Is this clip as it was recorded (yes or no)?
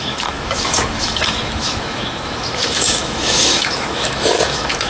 no